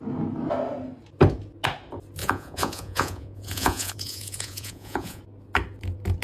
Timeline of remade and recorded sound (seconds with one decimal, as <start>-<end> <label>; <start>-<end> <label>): 0.0-2.2 recorded; 2.2-5.2 remade; 5.2-6.2 recorded